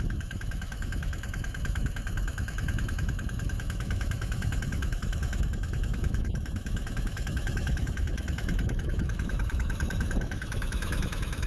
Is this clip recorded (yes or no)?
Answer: no